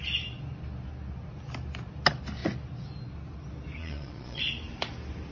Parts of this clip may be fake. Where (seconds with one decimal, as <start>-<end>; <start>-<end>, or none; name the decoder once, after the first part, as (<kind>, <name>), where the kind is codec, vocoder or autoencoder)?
3.8-4.4 (vocoder, Vocos)